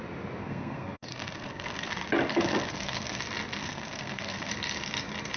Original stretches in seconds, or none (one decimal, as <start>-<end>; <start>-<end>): 0.0-0.4; 1.9-2.3; 3.2-3.6; 4.5-5.4